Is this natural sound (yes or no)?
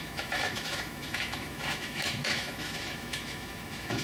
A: no